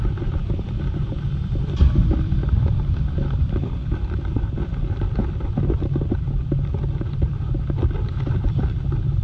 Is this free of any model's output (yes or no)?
no